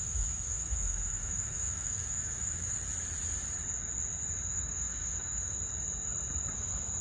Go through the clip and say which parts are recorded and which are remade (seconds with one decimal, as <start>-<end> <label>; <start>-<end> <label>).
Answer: 0.0-2.7 remade; 2.7-4.5 recorded; 4.5-5.6 remade; 5.6-7.0 recorded